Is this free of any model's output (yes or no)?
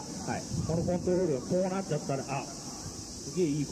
no